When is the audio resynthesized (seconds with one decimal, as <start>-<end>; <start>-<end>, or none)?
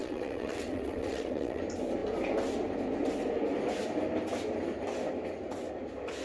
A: 0.0-1.6